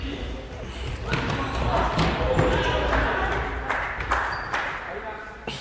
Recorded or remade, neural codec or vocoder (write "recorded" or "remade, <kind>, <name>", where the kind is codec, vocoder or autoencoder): recorded